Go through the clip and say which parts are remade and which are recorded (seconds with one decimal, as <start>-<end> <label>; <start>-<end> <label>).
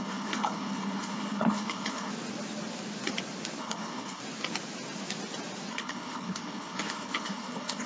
0.0-2.1 remade; 2.1-3.6 recorded; 3.6-4.2 remade; 4.2-5.7 recorded; 5.7-7.9 remade